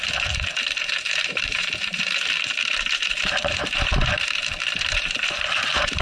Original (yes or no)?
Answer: no